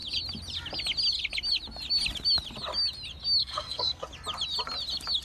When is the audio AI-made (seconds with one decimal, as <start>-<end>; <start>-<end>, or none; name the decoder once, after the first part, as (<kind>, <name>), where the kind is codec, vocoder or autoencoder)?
3.4-4.1 (codec, SNAC)